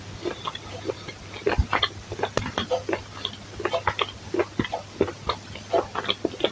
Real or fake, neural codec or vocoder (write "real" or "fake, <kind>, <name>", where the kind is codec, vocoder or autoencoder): real